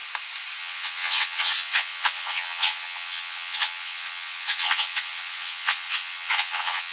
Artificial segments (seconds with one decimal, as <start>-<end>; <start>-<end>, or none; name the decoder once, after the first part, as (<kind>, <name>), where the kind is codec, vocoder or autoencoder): 0.6-6.9 (vocoder, WaveNeXt)